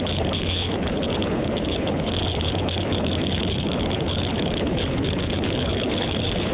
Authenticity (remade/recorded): remade